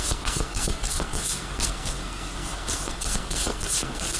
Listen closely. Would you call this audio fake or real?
fake